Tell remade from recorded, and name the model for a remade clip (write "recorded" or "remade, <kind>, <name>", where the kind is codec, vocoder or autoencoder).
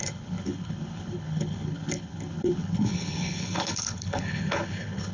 remade, codec, HILCodec